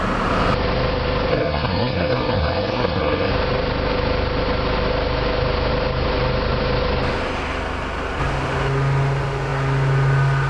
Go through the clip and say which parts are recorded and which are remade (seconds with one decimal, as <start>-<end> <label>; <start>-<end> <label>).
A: 0.0-1.3 recorded; 1.3-3.3 remade; 3.3-10.5 recorded

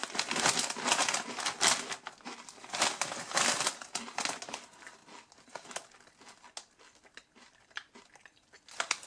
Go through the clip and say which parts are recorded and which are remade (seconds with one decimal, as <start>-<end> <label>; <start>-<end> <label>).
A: 0.0-9.1 recorded

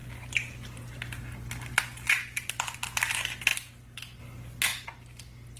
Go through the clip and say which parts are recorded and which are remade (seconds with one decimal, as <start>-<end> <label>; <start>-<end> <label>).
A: 0.0-5.6 recorded

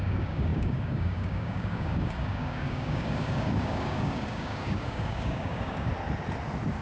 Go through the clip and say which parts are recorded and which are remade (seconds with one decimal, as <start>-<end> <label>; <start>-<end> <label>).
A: 0.0-5.9 remade; 5.9-6.8 recorded

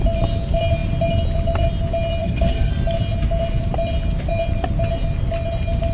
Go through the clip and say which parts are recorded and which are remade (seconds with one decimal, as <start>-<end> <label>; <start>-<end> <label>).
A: 0.0-2.2 recorded; 2.2-2.7 remade; 2.7-5.9 recorded

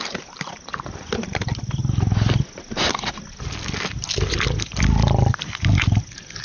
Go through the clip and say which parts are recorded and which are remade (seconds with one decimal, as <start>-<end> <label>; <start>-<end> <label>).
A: 0.0-6.4 recorded

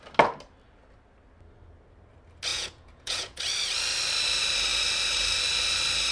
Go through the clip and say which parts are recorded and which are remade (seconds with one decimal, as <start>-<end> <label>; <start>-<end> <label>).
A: 0.0-2.5 recorded; 2.5-3.4 remade; 3.4-6.1 recorded

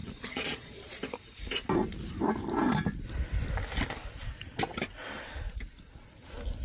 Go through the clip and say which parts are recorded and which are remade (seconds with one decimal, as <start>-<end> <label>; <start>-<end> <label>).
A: 0.0-1.0 remade; 1.0-6.6 recorded